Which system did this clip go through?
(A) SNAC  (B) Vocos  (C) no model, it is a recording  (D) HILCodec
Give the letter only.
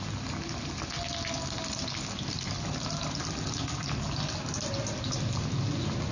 C